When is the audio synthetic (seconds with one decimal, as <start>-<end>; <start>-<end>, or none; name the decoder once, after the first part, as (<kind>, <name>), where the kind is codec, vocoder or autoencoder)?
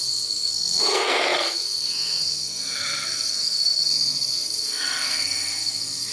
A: 0.0-6.1 (codec, SNAC)